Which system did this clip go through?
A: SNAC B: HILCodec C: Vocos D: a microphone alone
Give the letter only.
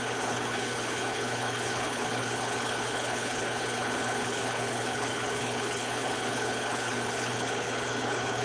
B